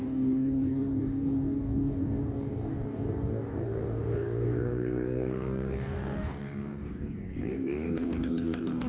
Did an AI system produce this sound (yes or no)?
yes